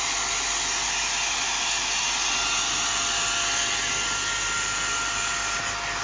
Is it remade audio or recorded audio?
recorded